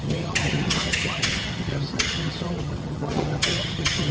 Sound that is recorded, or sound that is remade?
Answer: remade